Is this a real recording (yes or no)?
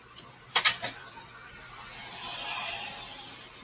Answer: no